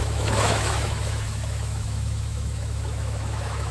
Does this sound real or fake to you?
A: fake